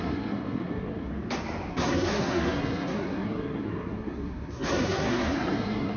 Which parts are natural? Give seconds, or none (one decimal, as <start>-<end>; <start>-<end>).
1.1-1.7